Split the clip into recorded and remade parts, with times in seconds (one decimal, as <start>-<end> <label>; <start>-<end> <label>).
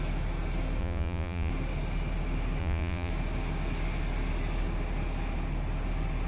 0.0-0.8 recorded; 0.8-1.5 remade; 1.5-2.6 recorded; 2.6-3.1 remade; 3.1-6.3 recorded